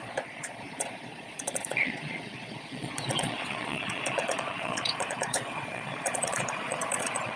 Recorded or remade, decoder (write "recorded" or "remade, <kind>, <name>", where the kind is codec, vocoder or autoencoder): remade, vocoder, Vocos